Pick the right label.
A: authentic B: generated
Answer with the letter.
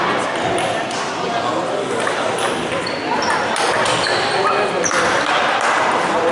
A